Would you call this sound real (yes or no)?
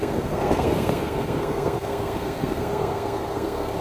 no